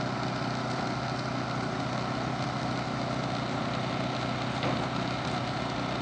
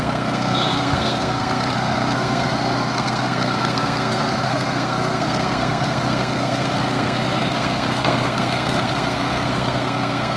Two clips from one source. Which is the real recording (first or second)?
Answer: first